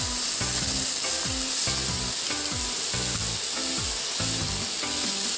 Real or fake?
real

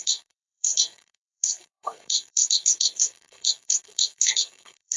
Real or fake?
fake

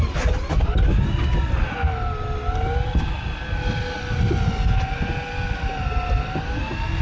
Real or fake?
real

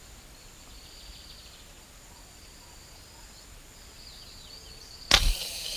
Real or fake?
real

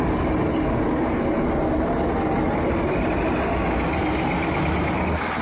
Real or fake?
real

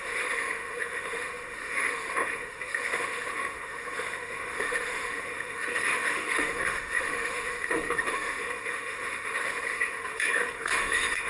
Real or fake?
fake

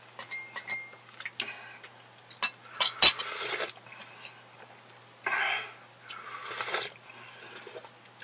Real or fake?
real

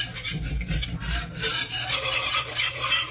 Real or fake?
fake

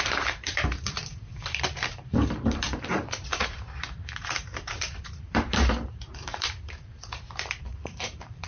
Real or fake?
fake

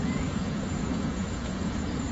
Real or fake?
fake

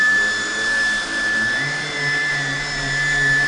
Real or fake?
real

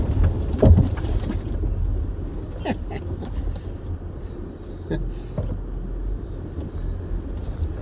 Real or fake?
real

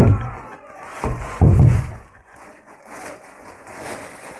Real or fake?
fake